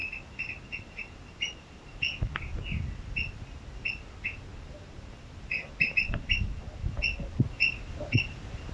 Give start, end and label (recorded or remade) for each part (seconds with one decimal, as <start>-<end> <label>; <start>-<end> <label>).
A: 0.0-2.0 remade; 2.0-4.5 recorded; 4.5-6.9 remade; 6.9-8.7 recorded